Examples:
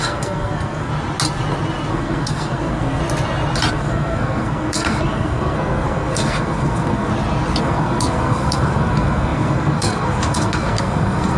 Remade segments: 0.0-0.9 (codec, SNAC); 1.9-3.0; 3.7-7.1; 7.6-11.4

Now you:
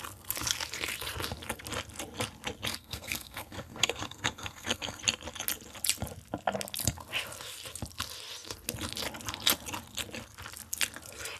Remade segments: 2.7-5.0 (codec, SNAC)